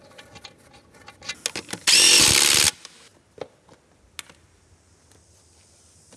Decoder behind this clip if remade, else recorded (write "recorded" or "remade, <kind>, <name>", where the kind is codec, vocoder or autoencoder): recorded